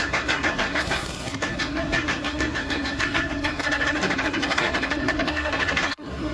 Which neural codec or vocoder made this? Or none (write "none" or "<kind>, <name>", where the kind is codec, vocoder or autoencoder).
codec, SNAC